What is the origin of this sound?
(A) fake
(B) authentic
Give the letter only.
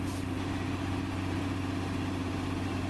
B